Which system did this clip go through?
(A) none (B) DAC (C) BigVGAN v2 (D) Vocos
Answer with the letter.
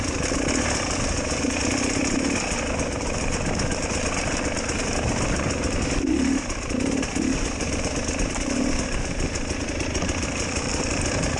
A